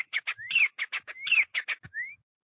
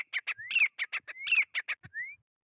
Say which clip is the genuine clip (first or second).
second